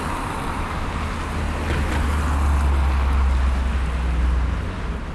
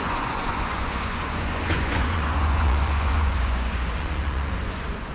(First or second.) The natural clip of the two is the first